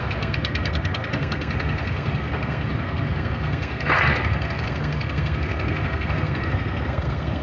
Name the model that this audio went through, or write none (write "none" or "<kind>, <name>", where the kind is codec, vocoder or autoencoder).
codec, SNAC